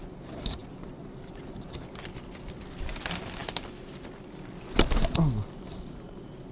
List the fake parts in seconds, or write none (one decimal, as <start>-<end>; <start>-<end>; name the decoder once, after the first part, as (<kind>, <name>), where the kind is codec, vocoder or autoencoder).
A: none